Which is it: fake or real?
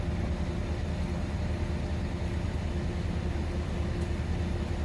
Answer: real